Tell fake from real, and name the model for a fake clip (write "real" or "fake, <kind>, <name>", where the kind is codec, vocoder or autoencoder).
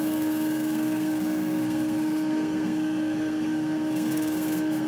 fake, codec, SNAC